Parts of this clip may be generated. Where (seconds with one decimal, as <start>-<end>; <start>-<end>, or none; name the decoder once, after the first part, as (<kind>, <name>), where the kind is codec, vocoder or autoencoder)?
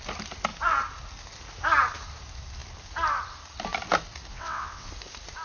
4.3-4.9 (vocoder, WaveNeXt)